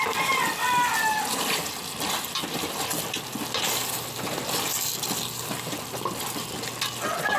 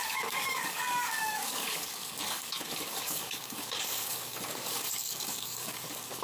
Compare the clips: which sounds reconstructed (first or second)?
second